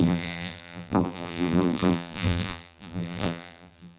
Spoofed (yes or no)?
yes